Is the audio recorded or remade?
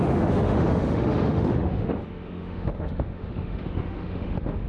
remade